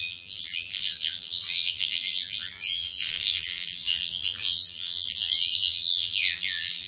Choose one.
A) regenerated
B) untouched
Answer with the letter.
A